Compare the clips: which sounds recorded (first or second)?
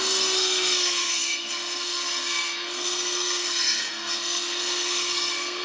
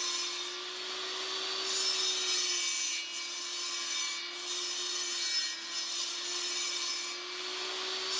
second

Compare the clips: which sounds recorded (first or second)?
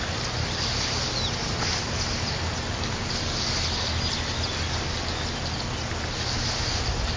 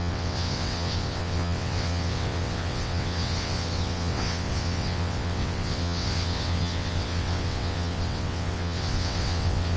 first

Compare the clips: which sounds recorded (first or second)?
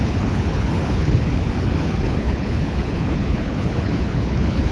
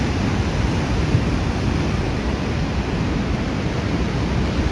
second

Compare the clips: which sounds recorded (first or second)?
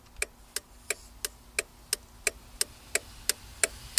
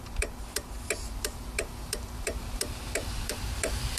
first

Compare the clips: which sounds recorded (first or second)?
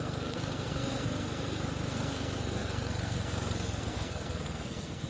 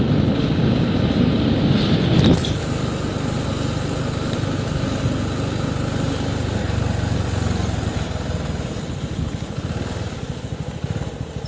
second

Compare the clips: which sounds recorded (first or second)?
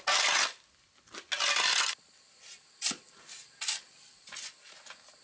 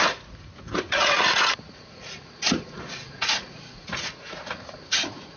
first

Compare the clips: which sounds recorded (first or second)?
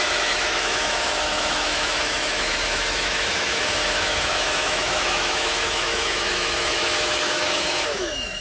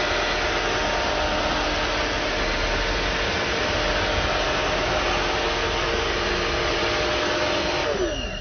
second